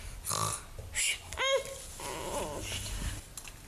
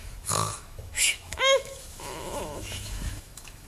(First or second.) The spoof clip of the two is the second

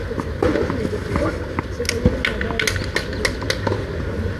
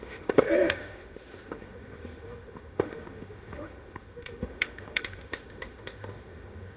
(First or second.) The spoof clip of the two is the second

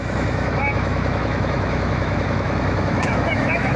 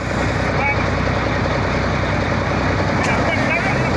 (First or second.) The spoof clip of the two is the first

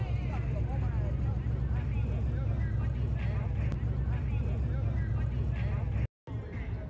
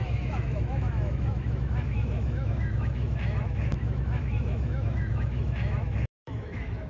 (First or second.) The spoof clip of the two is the second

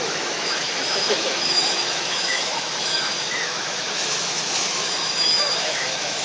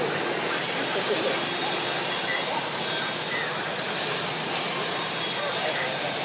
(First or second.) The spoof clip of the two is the first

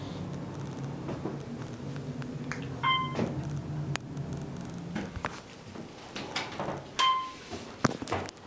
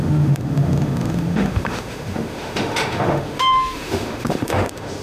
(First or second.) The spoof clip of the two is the second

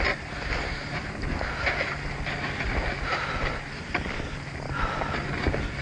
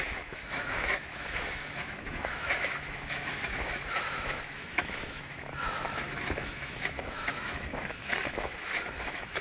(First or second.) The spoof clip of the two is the second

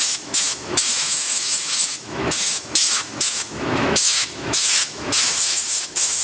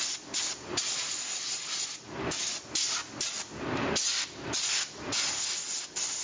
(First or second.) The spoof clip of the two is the first